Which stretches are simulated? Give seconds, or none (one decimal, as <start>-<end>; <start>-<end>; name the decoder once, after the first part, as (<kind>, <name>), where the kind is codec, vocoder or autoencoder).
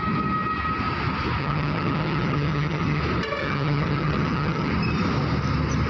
1.4-3.0 (vocoder, HiFi-GAN); 3.4-4.7